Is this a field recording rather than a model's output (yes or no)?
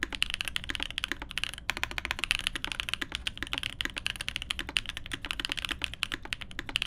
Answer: yes